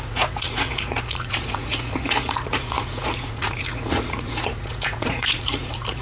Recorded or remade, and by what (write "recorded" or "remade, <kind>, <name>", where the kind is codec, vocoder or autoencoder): remade, vocoder, Vocos